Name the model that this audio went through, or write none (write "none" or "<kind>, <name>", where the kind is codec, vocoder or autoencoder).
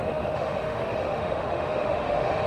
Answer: autoencoder, DAC-VAE